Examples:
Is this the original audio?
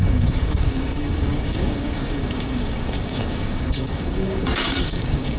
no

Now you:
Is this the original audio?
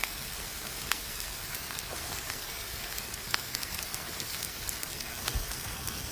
no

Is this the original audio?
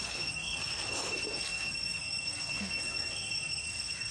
no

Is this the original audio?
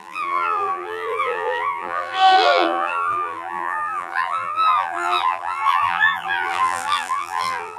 no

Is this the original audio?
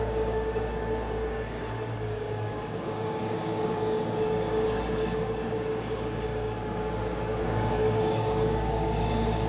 no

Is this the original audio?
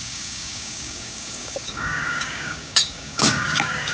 no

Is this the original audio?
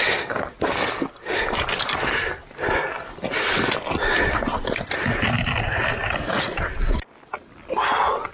yes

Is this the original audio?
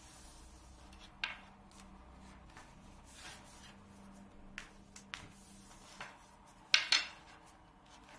yes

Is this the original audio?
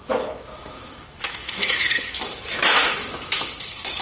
no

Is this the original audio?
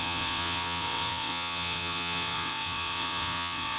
no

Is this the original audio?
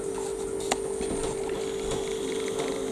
yes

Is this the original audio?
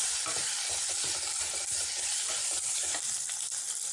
yes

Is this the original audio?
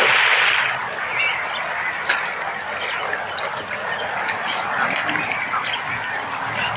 yes